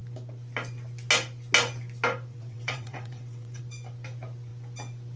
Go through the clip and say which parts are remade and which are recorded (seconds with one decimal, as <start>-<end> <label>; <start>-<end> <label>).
0.0-2.3 recorded; 2.3-3.6 remade; 3.6-5.2 recorded